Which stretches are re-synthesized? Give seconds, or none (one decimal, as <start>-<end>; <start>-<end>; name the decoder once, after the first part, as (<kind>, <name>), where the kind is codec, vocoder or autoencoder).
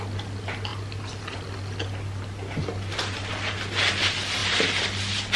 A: none